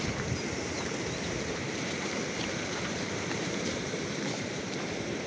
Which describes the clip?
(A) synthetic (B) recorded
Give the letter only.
A